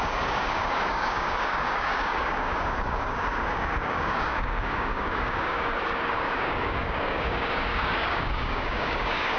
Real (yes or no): no